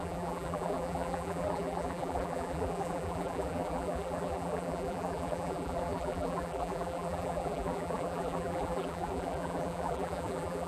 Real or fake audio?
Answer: fake